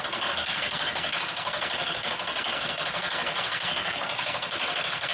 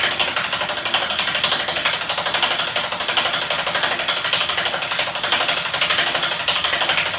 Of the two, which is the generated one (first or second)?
first